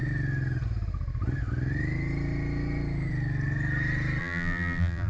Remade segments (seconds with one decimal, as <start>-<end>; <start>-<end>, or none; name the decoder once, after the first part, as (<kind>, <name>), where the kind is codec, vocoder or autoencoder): 4.2-5.1 (vocoder, BigVGAN v2)